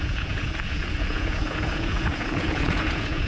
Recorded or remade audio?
remade